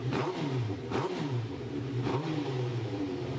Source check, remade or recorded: remade